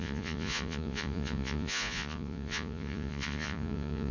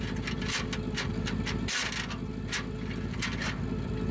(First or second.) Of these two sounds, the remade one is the first